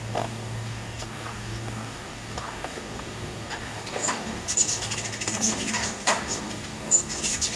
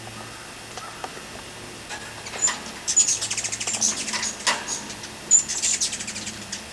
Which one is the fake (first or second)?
first